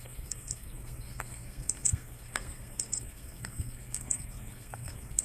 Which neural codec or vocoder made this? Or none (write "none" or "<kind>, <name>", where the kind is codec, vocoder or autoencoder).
codec, SNAC